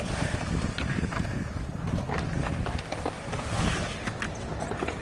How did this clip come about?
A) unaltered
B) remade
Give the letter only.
A